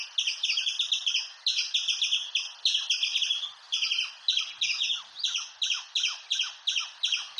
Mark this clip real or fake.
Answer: real